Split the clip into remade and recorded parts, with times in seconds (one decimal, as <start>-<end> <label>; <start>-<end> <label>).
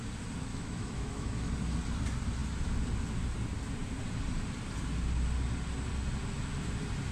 0.0-0.5 recorded; 0.5-1.5 remade; 1.5-7.1 recorded